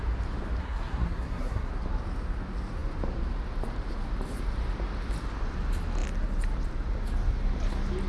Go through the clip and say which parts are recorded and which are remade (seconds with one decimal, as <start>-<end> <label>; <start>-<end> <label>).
0.0-0.6 recorded; 0.6-1.7 remade; 1.7-8.1 recorded